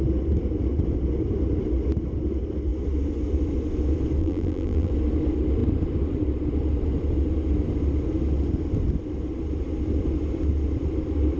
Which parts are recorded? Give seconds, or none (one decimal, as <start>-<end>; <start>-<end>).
0.0-4.2; 4.9-11.4